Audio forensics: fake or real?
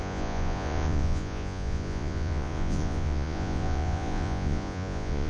fake